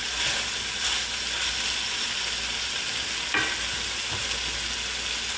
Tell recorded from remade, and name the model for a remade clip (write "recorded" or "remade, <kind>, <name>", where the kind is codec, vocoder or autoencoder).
recorded